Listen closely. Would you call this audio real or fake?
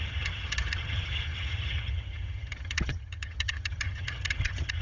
fake